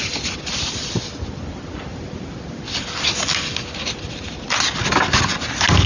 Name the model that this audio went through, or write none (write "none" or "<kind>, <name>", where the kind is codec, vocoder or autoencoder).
none